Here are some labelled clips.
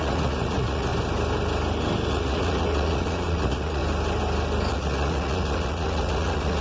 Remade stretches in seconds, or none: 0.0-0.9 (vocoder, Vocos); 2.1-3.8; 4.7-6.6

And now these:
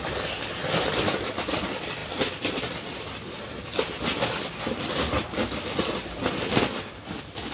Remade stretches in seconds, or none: none

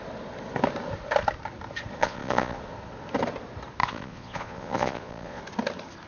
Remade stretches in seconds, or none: 2.0-2.6 (vocoder, Vocos); 3.8-5.4

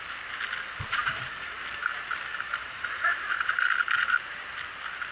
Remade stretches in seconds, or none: 1.0-1.6 (vocoder, Vocos); 2.6-3.5

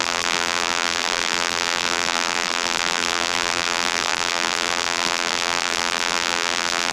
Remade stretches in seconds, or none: 0.0-6.9 (vocoder, BigVGAN v2)